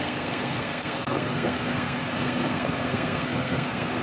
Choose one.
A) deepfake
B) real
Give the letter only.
A